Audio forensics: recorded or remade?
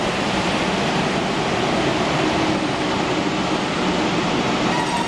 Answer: remade